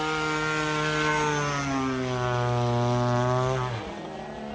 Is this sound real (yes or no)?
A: yes